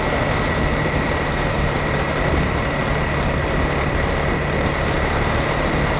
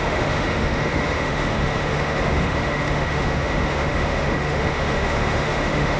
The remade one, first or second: second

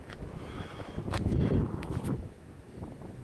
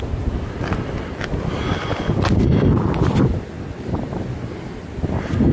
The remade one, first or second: first